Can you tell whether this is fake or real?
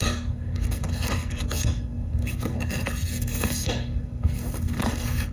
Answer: fake